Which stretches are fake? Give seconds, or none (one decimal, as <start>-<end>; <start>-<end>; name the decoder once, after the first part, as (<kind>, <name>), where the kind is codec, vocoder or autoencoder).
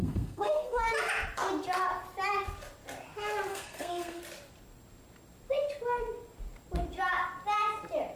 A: 0.0-0.8 (codec, SNAC); 3.5-4.2